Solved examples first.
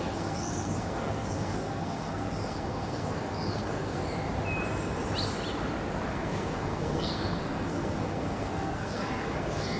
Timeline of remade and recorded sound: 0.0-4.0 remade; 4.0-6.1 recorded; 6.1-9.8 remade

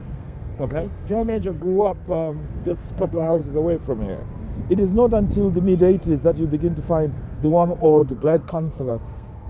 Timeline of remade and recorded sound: 0.0-3.4 remade; 3.4-7.2 recorded; 7.2-9.5 remade

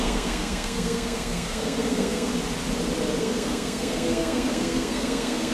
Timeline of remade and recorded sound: 0.0-2.3 remade; 2.3-3.2 recorded; 3.2-5.5 remade

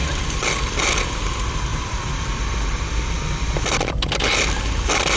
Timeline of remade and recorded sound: 0.0-0.7 remade; 0.7-5.2 recorded

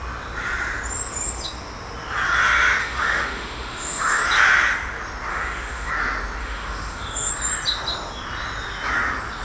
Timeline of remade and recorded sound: 0.0-2.8 recorded; 2.8-4.2 remade; 4.2-5.3 recorded; 5.3-5.9 remade; 5.9-6.4 recorded; 6.4-7.3 remade; 7.3-9.4 recorded

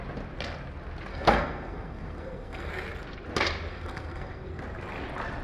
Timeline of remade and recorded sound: 0.0-1.1 recorded; 1.1-2.7 remade; 2.7-3.7 recorded; 3.7-4.6 remade; 4.6-5.4 recorded

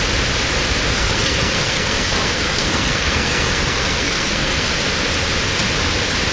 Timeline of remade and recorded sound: 0.0-0.9 recorded; 0.9-4.7 remade; 4.7-6.3 recorded

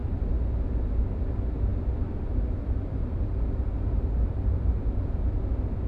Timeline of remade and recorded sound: 0.0-0.9 remade; 0.9-1.7 recorded; 1.7-5.2 remade; 5.2-5.9 recorded